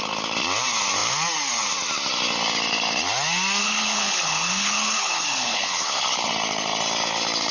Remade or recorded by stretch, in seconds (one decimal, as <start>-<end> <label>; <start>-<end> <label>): 0.0-3.6 recorded; 3.6-6.3 remade; 6.3-7.5 recorded